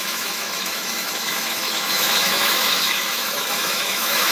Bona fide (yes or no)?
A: no